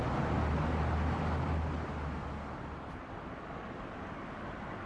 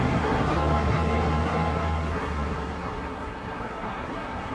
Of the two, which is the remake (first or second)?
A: second